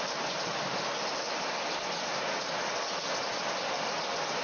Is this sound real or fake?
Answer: real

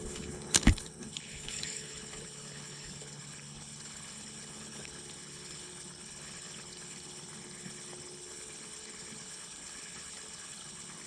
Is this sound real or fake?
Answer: fake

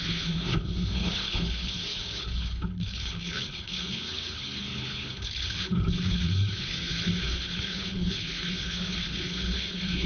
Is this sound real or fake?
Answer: fake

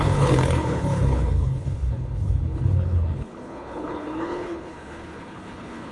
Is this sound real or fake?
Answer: fake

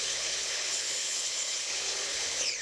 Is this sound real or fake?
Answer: fake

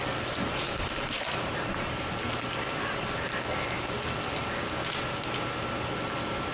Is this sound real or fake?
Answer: real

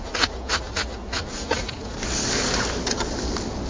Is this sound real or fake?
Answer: real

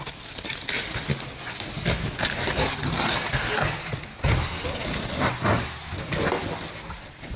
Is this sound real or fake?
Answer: real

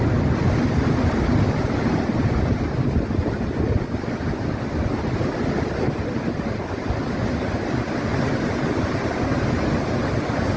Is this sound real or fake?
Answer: real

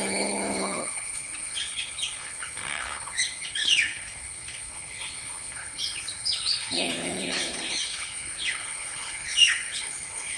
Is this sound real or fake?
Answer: fake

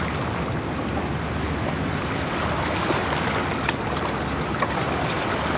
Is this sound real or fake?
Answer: real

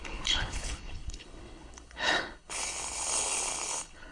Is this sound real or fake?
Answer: fake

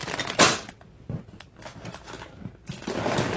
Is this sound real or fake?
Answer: real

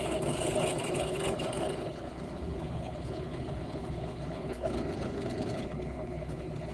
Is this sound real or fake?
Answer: fake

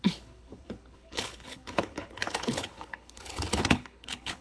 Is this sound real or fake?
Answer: fake